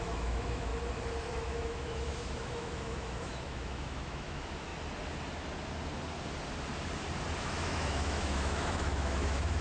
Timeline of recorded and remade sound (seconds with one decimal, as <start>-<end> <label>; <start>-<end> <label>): 0.0-0.7 remade; 0.7-1.3 recorded; 1.3-4.7 remade; 4.7-7.4 recorded; 7.4-9.6 remade